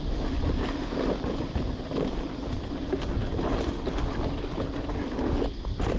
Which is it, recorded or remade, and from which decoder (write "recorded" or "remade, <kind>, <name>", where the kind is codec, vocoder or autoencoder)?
recorded